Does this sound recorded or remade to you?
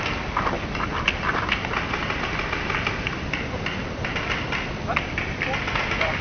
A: recorded